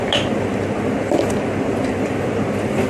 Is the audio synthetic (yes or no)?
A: yes